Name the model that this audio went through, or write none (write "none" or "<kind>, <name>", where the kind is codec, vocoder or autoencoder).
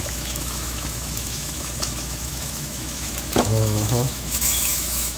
autoencoder, DAC-VAE